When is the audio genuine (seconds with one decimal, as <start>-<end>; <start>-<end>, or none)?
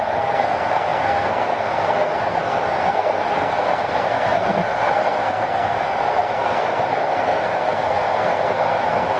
none